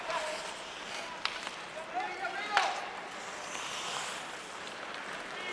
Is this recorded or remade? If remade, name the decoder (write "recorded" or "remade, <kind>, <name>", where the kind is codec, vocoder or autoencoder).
recorded